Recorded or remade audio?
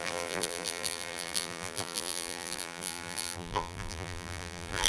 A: remade